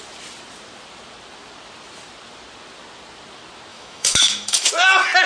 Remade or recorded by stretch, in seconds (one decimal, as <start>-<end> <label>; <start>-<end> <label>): 0.0-3.7 recorded; 3.7-4.7 remade; 4.7-5.3 recorded